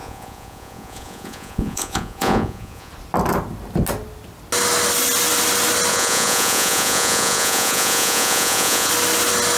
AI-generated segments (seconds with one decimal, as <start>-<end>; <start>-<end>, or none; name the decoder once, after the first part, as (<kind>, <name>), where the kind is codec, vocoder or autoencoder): 0.0-2.9 (vocoder, Vocos); 5.9-8.9